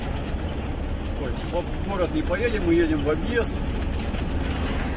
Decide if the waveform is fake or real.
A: real